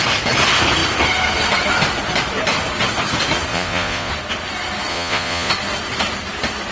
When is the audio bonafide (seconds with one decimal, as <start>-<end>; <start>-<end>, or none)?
0.0-3.5; 4.1-4.9; 5.5-6.7